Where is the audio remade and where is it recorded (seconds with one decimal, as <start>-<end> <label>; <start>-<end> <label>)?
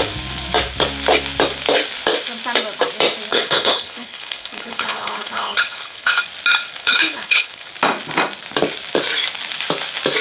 0.0-3.3 recorded; 3.3-6.2 remade; 6.2-6.8 recorded; 6.8-7.7 remade; 7.7-10.2 recorded